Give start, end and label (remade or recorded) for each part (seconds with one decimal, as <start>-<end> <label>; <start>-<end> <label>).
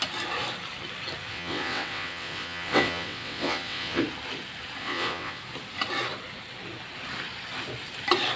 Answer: 0.0-1.3 recorded; 1.3-4.0 remade; 4.0-4.8 recorded; 4.8-5.4 remade; 5.4-8.4 recorded